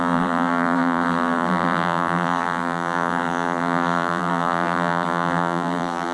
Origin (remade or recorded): remade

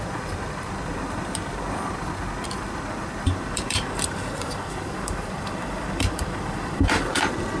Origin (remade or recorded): remade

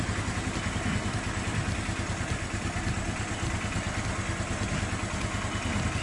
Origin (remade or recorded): recorded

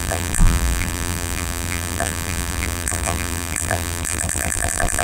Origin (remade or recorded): remade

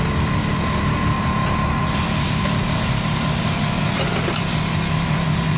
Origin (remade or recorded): recorded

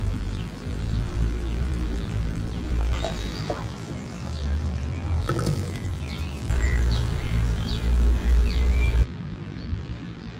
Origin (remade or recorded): remade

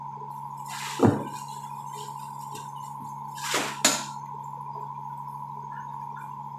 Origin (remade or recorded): recorded